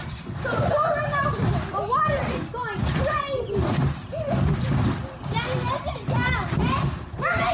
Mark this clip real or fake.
real